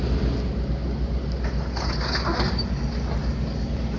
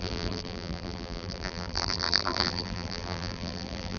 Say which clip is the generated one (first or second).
second